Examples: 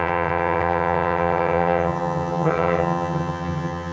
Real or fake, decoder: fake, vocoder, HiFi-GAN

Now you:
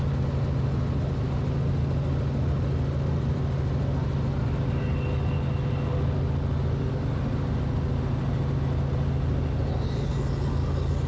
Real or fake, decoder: real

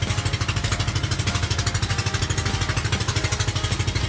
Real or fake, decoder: real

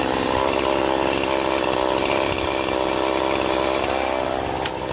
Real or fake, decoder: real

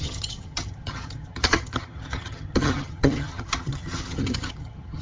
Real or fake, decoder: fake, vocoder, HiFi-GAN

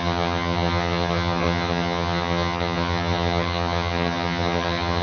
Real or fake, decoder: fake, vocoder, HiFi-GAN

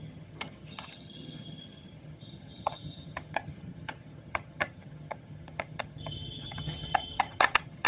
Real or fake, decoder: fake, vocoder, HiFi-GAN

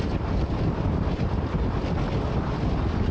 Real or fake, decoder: real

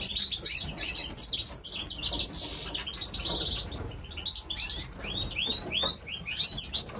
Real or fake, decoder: real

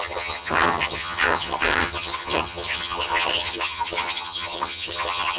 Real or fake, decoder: fake, vocoder, HiFi-GAN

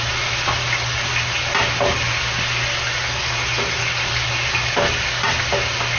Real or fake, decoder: real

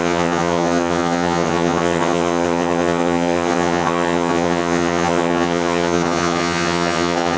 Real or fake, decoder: fake, vocoder, HiFi-GAN